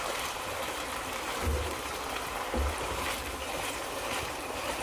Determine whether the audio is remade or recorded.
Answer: remade